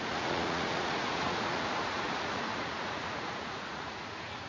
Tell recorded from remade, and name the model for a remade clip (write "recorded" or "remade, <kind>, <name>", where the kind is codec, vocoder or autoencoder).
remade, vocoder, Vocos